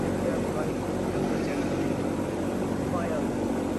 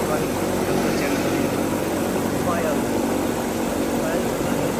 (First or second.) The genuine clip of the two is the second